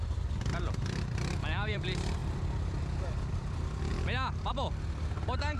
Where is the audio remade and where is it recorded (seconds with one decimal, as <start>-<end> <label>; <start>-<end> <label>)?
0.0-2.2 remade; 2.2-3.3 recorded; 3.3-3.9 remade; 3.9-4.5 recorded; 4.5-5.6 remade